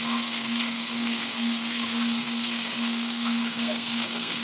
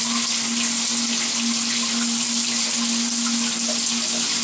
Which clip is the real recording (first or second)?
second